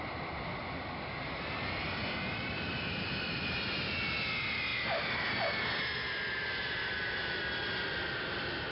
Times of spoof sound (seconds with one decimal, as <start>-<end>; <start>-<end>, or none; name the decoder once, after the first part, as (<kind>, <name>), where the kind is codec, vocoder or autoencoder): 6.8-7.4 (autoencoder, DAC-VAE)